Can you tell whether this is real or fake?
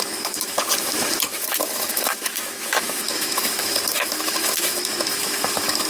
fake